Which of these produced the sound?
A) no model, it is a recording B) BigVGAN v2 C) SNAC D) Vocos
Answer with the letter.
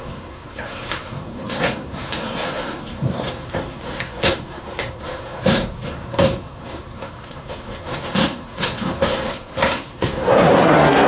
C